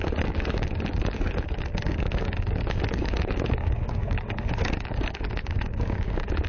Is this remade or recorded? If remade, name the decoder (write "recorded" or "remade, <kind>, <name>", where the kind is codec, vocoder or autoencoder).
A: remade, codec, DAC